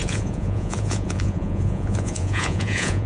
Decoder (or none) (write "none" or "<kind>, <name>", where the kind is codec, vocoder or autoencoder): vocoder, Vocos